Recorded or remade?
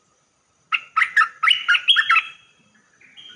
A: recorded